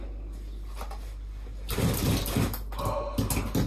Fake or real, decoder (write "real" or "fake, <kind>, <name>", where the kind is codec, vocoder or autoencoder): real